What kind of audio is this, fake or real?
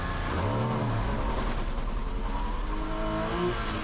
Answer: real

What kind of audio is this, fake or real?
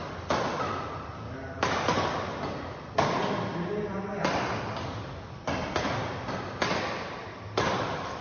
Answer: real